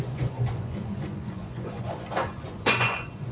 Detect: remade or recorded remade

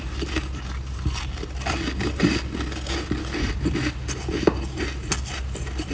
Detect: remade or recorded recorded